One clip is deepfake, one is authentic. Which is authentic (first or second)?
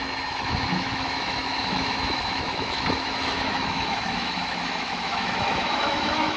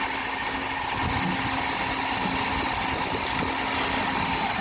second